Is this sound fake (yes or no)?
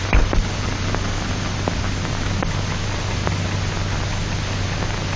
no